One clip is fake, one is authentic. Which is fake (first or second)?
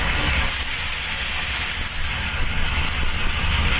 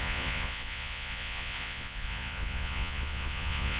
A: second